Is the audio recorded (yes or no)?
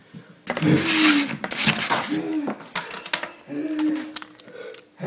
yes